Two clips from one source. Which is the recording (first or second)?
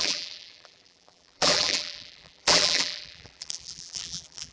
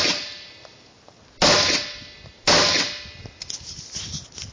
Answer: second